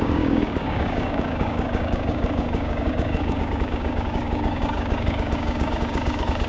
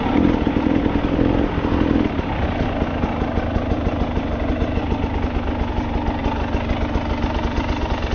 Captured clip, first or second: second